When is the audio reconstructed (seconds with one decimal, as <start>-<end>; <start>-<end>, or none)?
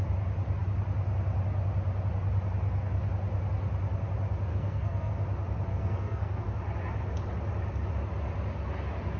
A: 4.5-5.1; 5.7-6.4